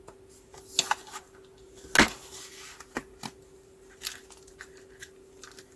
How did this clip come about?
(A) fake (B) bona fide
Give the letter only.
B